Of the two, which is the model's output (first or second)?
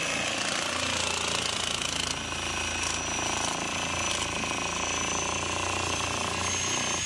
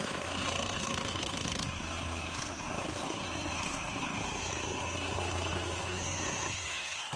second